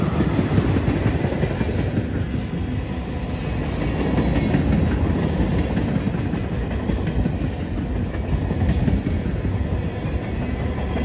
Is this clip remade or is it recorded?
recorded